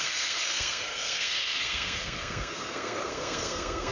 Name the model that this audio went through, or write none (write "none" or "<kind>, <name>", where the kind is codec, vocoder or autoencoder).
codec, SNAC